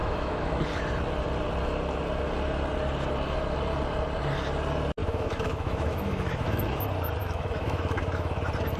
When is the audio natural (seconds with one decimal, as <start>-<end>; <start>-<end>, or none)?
0.6-5.0; 6.8-7.2; 8.4-8.8